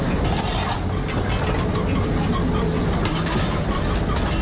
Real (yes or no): yes